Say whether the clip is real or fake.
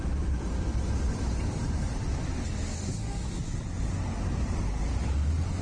real